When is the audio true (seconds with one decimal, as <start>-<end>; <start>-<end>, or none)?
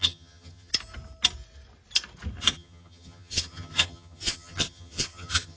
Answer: 0.7-2.5